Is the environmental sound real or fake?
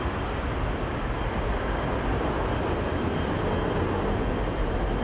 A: real